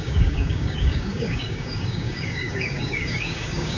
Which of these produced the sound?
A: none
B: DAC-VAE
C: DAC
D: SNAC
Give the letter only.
C